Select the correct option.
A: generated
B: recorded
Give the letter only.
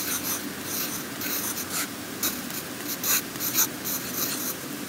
B